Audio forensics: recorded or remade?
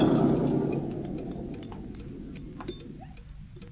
recorded